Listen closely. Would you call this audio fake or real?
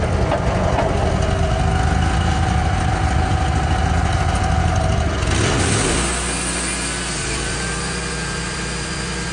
real